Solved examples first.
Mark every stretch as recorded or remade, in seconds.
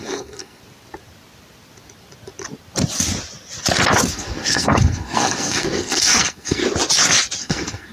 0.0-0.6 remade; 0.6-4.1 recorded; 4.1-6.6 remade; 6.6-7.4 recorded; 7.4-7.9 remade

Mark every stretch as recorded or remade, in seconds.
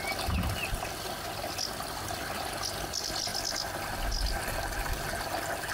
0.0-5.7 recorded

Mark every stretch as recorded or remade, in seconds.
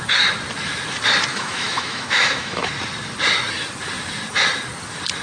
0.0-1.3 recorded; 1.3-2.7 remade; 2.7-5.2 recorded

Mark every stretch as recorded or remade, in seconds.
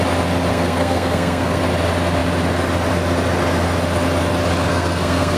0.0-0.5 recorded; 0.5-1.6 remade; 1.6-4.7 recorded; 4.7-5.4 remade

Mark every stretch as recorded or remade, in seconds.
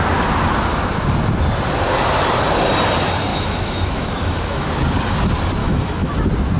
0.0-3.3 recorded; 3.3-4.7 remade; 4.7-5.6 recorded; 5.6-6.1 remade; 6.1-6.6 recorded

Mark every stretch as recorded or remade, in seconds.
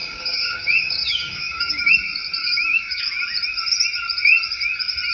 0.0-1.9 remade; 1.9-2.4 recorded; 2.4-3.0 remade; 3.0-5.1 recorded